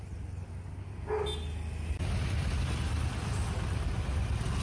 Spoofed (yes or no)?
no